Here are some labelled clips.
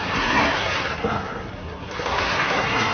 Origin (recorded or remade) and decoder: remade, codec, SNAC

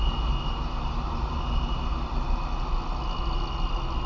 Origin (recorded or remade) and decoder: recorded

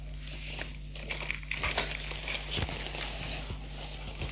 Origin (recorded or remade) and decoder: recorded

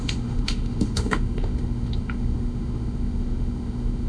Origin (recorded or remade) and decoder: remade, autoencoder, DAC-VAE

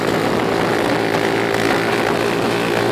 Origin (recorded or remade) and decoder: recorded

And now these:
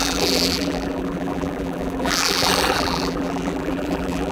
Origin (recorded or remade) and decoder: remade, vocoder, BigVGAN v2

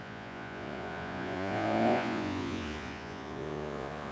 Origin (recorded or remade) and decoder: remade, vocoder, Vocos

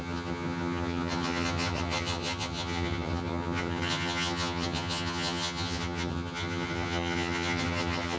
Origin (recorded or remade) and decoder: remade, vocoder, HiFi-GAN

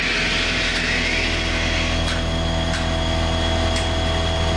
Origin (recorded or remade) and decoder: recorded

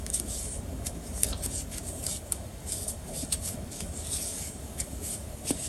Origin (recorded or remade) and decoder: remade, codec, DAC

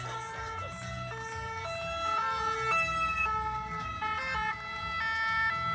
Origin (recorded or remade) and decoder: recorded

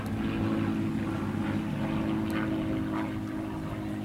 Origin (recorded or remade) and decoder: recorded